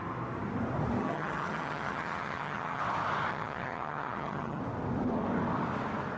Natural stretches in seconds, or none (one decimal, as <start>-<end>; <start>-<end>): 0.0-1.0; 2.8-3.3; 4.6-6.2